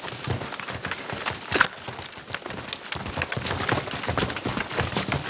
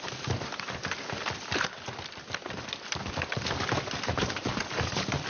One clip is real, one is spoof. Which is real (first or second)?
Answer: first